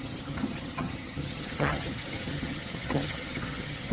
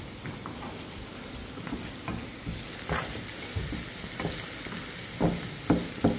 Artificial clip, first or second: first